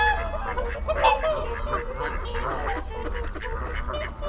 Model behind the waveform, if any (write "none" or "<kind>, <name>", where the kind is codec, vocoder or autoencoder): none